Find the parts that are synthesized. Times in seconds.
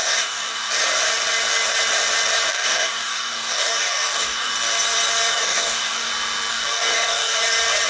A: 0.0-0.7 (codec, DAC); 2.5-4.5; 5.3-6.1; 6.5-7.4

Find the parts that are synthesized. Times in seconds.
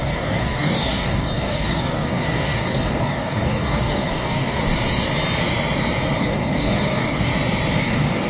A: 0.0-4.6 (codec, DAC); 6.2-7.3; 7.8-8.3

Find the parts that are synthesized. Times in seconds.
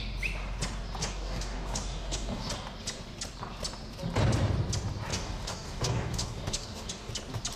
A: 1.0-2.5 (codec, DAC); 5.1-7.1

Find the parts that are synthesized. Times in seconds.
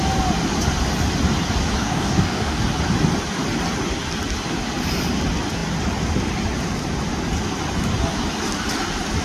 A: 1.8-2.6 (codec, DAC)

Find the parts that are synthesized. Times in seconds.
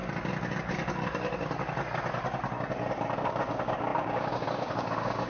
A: 3.2-5.3 (codec, DAC)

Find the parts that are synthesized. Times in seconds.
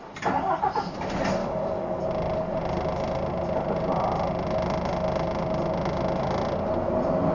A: 1.4-2.0 (codec, DAC)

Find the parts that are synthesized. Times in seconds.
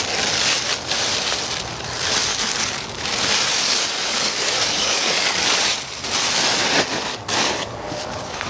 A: 2.3-3.0 (codec, DAC); 3.5-5.6; 7.1-8.5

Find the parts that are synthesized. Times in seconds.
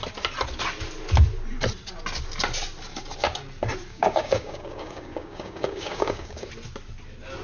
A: 3.9-6.5 (codec, DAC)